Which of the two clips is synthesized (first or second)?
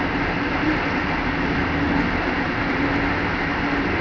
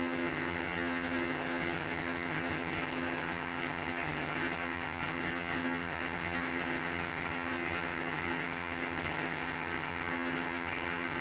second